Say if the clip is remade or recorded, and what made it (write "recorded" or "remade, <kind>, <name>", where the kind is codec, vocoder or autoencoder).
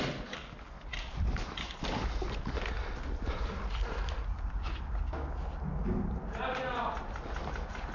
recorded